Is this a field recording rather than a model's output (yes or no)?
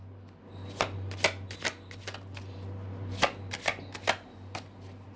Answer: yes